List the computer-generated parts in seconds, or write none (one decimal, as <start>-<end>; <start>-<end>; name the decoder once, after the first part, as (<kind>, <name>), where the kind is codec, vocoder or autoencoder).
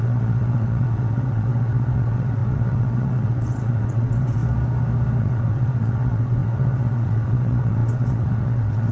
0.0-4.4 (vocoder, WaveNeXt); 5.2-8.9